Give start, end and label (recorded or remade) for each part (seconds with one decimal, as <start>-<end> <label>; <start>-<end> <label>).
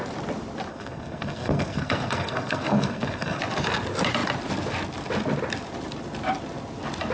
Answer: 0.0-0.7 recorded; 0.7-3.4 remade; 3.4-7.1 recorded